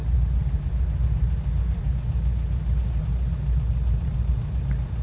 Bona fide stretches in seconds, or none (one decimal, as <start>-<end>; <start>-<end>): 0.0-5.0